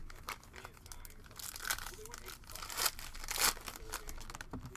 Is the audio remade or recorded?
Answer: recorded